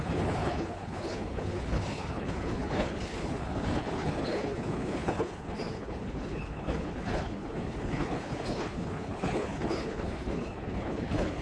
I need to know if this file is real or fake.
fake